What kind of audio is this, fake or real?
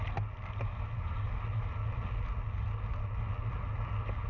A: real